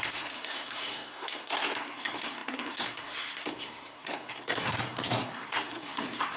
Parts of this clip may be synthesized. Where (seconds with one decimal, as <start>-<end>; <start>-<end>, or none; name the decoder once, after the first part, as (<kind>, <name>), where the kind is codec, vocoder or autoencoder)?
0.0-6.4 (codec, SNAC)